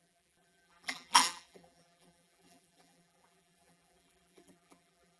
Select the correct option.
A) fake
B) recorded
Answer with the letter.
A